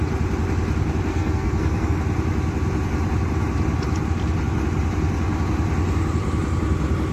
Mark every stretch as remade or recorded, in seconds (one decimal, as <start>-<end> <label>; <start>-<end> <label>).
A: 0.0-1.1 recorded; 1.1-2.0 remade; 2.0-7.1 recorded